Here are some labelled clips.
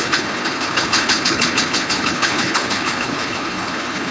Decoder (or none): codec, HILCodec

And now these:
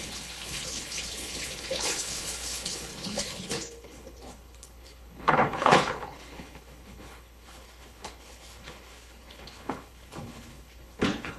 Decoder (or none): codec, HILCodec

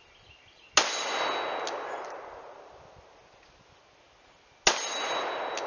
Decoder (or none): none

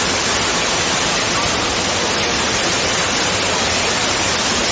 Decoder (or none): none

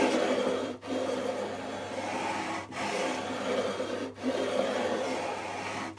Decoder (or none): none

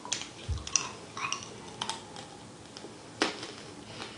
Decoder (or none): none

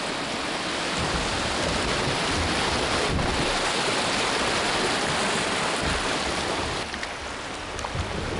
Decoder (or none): none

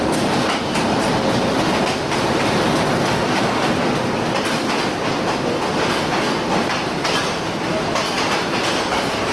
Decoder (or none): none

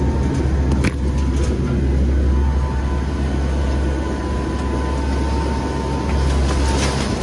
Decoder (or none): none